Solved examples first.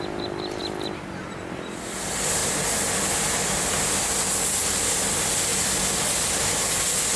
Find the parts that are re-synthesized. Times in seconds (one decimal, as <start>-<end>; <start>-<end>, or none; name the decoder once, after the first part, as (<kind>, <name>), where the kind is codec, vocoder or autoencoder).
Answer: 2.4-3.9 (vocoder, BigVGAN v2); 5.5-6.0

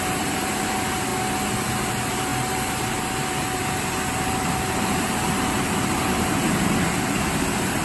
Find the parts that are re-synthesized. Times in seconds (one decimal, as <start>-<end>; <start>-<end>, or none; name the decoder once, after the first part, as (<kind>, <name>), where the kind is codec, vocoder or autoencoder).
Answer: 0.0-1.1 (vocoder, BigVGAN v2); 1.9-7.8

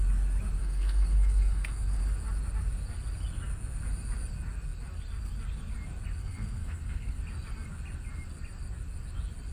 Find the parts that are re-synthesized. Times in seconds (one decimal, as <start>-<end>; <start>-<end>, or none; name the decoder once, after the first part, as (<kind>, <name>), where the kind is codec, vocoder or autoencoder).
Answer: 0.6-2.0 (codec, SNAC); 6.2-7.2

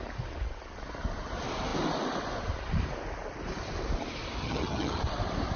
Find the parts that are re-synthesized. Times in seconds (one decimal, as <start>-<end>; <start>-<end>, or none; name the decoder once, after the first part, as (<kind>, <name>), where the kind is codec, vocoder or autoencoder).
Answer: 4.4-5.0 (vocoder, HiFi-GAN)

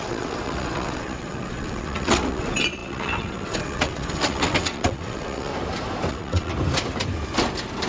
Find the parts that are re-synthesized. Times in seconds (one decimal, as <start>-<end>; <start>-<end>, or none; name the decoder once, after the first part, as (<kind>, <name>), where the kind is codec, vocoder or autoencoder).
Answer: 0.0-5.5 (vocoder, WaveNeXt); 6.1-6.5